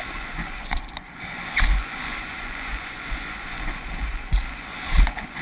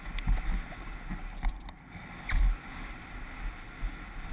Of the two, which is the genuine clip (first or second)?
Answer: second